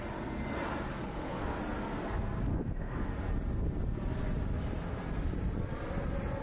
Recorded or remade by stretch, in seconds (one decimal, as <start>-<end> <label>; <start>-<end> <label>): 0.0-0.9 recorded; 0.9-1.6 remade; 1.6-2.5 recorded; 2.5-3.1 remade; 3.1-6.4 recorded